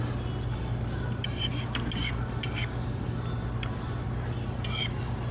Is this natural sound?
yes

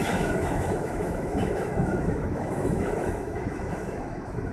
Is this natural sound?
no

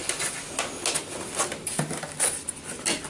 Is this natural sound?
yes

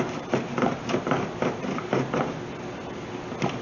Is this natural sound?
yes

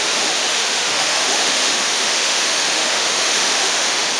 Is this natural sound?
no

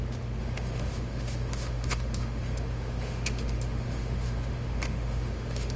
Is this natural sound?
no